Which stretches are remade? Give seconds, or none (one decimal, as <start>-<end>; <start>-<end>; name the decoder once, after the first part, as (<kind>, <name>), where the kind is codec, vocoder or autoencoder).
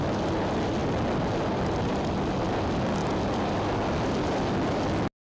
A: none